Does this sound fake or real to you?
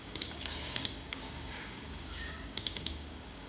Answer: fake